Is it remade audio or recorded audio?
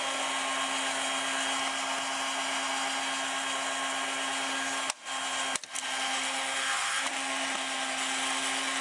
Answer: recorded